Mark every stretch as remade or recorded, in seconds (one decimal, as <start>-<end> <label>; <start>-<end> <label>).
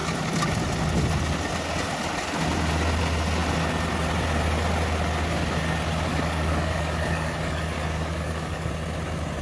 0.0-6.1 recorded; 6.1-8.7 remade; 8.7-9.4 recorded